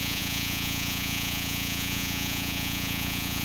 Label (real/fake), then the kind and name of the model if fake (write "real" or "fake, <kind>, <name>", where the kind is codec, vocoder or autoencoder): fake, vocoder, Vocos